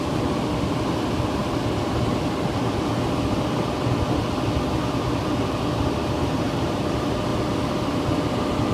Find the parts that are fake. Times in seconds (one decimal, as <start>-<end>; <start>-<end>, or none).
0.0-1.4; 5.2-7.3